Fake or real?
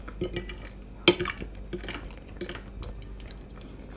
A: real